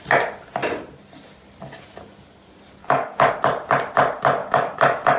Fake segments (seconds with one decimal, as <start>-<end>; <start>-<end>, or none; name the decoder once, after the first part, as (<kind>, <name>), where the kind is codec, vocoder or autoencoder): 2.8-3.3 (codec, DAC); 4.4-5.2